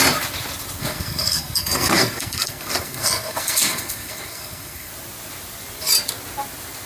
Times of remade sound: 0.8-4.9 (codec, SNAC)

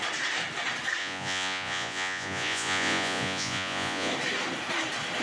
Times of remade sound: 1.0-4.1 (vocoder, Vocos)

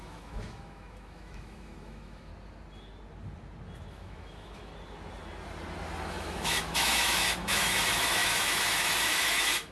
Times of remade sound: 0.0-2.3 (autoencoder, DAC-VAE); 3.9-4.7; 6.1-9.7

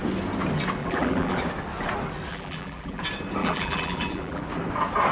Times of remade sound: 0.8-1.4 (vocoder, BigVGAN v2); 2.3-3.0; 3.4-4.4

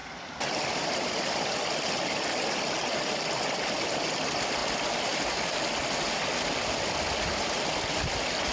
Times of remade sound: none